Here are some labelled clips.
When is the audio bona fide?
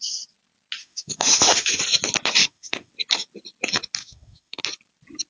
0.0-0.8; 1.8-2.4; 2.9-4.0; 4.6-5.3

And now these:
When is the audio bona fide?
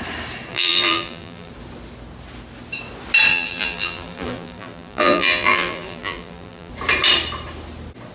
0.0-0.5; 1.5-3.3; 6.7-8.1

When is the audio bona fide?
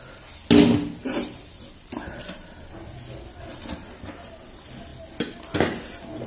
0.0-1.0; 1.6-6.3